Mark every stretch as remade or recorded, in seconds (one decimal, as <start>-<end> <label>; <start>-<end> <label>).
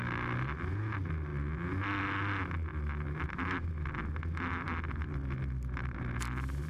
0.0-6.7 recorded